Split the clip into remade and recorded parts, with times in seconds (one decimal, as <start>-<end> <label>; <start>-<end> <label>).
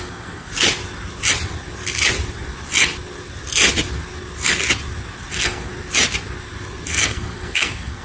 0.0-0.5 remade; 0.5-5.3 recorded; 5.3-5.7 remade; 5.7-6.9 recorded; 6.9-8.0 remade